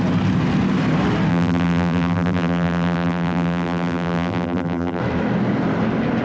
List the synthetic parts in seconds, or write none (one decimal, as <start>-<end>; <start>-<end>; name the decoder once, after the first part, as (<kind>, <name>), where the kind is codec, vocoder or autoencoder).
1.3-5.0 (vocoder, BigVGAN v2)